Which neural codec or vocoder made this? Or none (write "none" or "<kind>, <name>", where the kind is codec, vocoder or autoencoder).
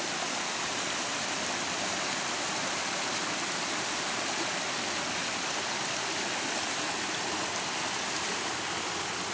none